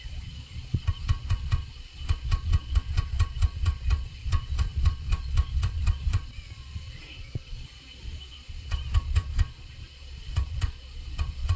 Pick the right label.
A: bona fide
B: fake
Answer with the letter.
B